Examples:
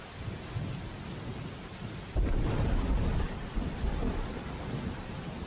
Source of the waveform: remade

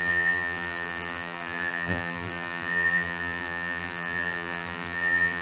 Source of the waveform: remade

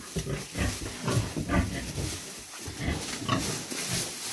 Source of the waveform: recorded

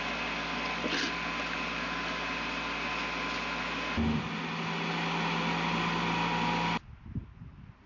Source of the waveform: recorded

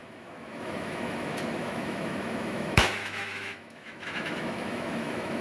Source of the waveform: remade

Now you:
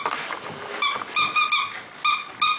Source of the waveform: recorded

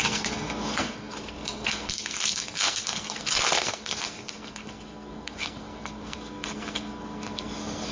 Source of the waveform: remade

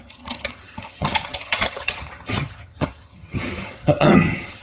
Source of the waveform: remade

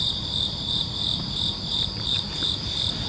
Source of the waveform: remade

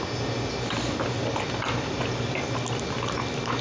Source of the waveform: recorded